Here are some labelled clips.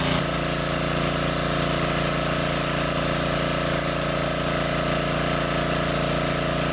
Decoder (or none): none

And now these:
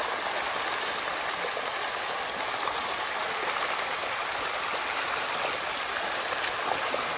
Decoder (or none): none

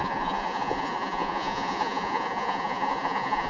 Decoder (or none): vocoder, Vocos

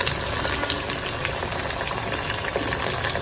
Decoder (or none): none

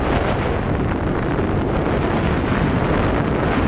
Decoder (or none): none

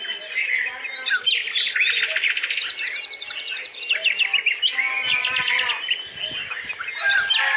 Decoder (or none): none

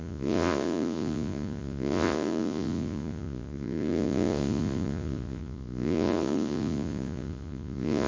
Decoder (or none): vocoder, Vocos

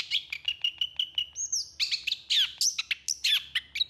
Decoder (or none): none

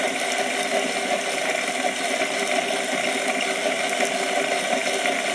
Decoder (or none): none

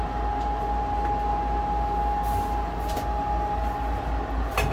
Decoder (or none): none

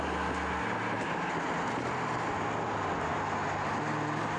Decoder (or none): none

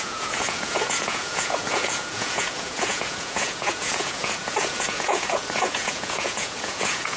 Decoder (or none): vocoder, Vocos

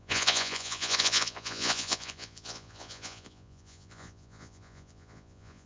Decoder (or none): vocoder, Vocos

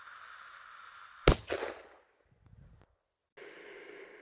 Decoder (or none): none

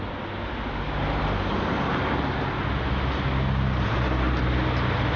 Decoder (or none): none